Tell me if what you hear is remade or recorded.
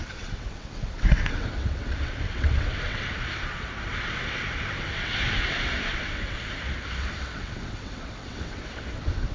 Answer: remade